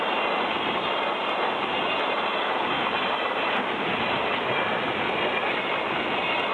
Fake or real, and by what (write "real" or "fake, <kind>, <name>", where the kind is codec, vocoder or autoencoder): real